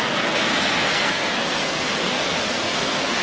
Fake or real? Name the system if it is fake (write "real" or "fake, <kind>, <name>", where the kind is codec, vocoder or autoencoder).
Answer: fake, codec, SNAC